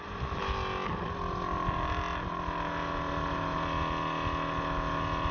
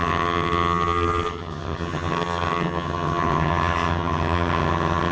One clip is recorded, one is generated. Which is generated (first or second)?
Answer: second